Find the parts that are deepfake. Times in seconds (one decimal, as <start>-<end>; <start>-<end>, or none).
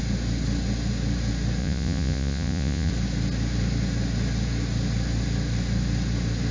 1.6-2.9